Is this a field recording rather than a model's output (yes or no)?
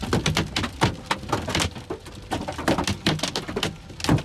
yes